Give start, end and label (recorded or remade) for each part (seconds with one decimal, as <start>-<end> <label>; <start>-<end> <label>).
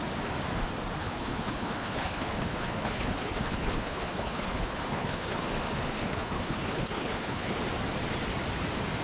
0.0-1.0 recorded; 1.0-5.5 remade; 5.5-5.9 recorded; 5.9-7.6 remade; 7.6-9.0 recorded